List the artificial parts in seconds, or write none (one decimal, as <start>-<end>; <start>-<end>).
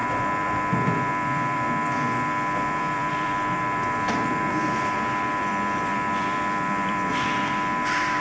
0.0-8.2